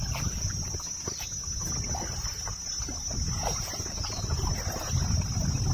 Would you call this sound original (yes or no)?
yes